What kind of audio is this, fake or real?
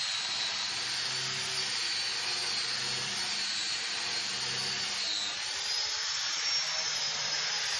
real